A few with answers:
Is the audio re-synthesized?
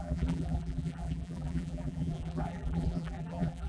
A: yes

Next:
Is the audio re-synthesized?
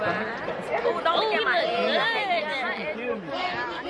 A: no